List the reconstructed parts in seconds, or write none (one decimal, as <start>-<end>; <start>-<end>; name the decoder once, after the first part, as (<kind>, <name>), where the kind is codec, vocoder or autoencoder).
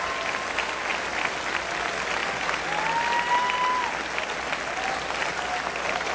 none